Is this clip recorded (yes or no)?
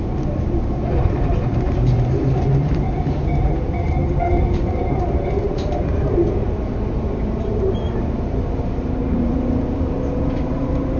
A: no